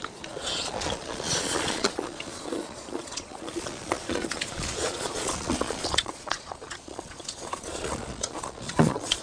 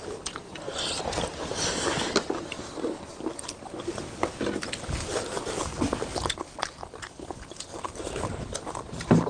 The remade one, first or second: first